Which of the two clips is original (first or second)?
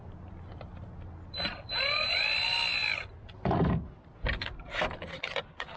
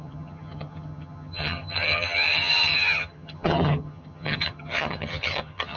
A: first